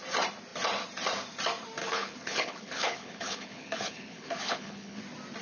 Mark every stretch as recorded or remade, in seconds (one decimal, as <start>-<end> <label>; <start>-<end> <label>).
0.0-1.8 recorded; 1.8-5.0 remade; 5.0-5.4 recorded